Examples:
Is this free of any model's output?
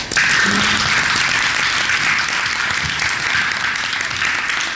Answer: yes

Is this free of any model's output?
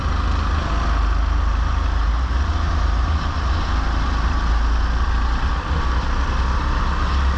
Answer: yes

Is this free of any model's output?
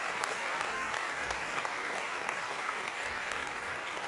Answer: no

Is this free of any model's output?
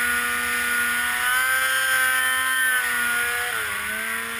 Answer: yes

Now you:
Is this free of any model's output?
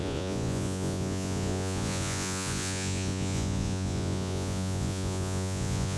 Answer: no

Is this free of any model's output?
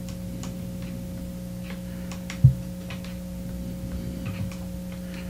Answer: yes